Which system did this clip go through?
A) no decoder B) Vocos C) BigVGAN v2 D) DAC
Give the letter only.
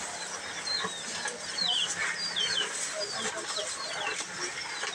A